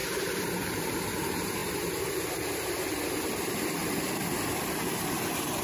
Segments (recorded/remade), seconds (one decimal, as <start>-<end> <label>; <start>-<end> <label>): 0.0-3.8 remade; 3.8-4.5 recorded; 4.5-5.6 remade